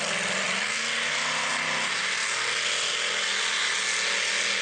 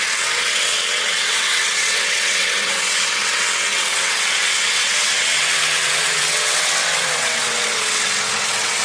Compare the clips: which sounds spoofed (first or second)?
second